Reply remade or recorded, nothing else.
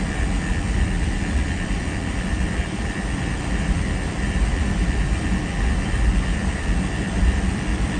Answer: remade